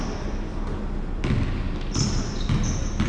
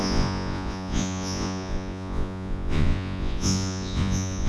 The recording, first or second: first